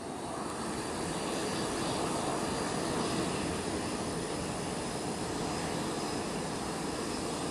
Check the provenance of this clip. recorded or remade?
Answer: recorded